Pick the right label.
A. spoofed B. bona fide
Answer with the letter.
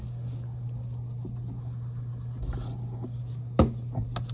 B